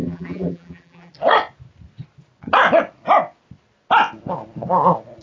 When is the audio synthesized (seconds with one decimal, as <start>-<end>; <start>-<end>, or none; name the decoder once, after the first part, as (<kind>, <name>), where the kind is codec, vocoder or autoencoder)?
0.0-1.1 (vocoder, BigVGAN v2)